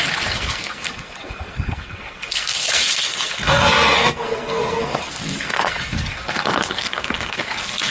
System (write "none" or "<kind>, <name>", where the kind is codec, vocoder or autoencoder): codec, SNAC